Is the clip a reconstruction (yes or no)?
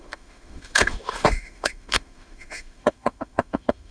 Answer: yes